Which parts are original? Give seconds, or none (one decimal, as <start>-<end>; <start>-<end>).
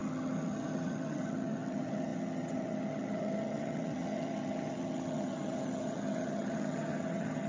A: none